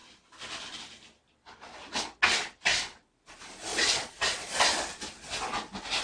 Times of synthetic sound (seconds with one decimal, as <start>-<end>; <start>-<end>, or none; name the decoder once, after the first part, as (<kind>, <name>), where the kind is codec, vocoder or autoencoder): 3.7-4.6 (vocoder, Vocos)